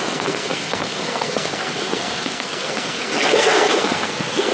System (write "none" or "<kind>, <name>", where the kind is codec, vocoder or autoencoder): codec, SNAC